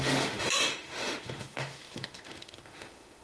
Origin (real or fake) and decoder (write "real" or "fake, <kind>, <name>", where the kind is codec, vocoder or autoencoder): fake, autoencoder, DAC-VAE